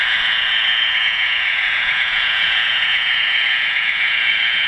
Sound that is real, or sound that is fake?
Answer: fake